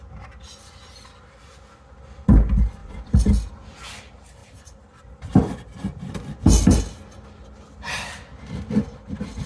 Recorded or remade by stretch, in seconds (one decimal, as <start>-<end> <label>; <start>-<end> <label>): 0.0-2.8 recorded; 2.8-3.5 remade; 3.5-4.4 recorded; 4.4-6.8 remade; 6.8-9.5 recorded